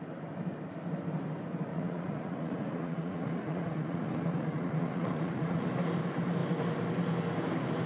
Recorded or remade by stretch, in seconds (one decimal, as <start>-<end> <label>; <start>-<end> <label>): 0.0-1.7 recorded; 1.7-5.7 remade; 5.7-7.9 recorded